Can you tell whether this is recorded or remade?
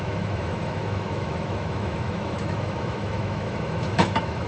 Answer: remade